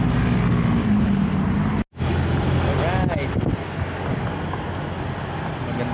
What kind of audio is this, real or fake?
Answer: real